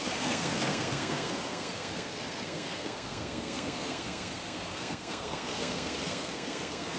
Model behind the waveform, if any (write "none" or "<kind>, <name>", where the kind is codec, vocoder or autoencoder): codec, SNAC